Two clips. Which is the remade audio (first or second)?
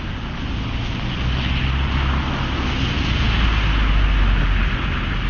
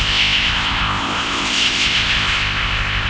second